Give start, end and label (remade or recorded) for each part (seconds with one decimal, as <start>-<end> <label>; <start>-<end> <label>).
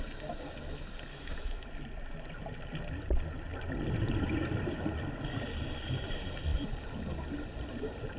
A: 0.0-1.1 recorded; 1.1-1.7 remade; 1.7-8.2 recorded